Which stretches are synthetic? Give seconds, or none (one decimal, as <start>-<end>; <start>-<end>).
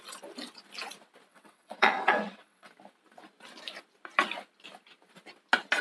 1.3-2.7